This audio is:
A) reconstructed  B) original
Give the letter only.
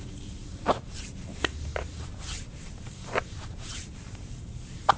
A